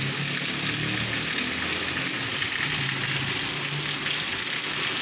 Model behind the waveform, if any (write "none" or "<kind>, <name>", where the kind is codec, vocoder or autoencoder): none